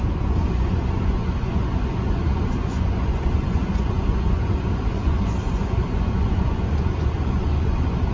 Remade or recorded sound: remade